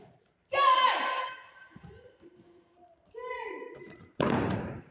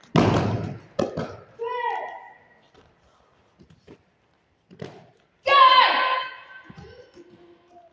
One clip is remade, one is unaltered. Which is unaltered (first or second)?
second